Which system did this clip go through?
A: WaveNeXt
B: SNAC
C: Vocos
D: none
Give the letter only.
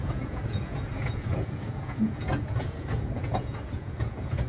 C